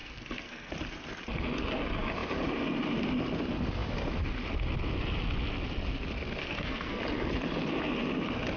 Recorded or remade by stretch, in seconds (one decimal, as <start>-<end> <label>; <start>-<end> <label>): 0.0-0.7 remade; 0.7-6.4 recorded; 6.4-7.0 remade; 7.0-8.6 recorded